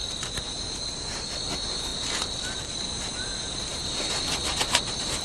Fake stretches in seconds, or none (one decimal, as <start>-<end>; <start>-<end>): 0.0-1.9; 2.6-5.2